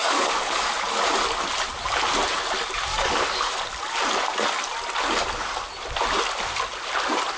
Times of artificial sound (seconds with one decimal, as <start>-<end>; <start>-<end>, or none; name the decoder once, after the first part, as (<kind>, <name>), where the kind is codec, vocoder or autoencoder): 0.0-0.7 (codec, DAC); 2.9-3.6